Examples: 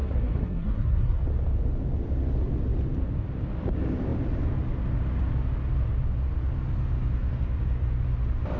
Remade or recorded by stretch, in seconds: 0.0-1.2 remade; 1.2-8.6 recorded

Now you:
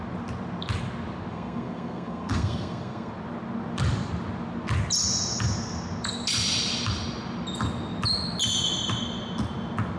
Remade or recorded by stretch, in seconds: 0.0-1.3 recorded; 1.3-3.1 remade; 3.1-10.0 recorded

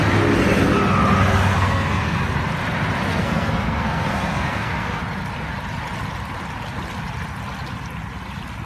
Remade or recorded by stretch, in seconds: 0.0-1.5 recorded; 1.5-2.2 remade; 2.2-3.1 recorded; 3.1-5.0 remade; 5.0-8.7 recorded

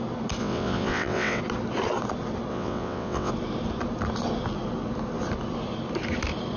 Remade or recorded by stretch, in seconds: 0.0-0.4 recorded; 0.4-1.4 remade; 1.4-2.5 recorded; 2.5-3.3 remade; 3.3-6.6 recorded

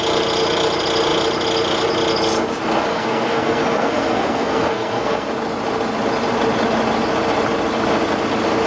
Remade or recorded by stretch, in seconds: 0.0-2.9 recorded; 2.9-5.3 remade; 5.3-8.7 recorded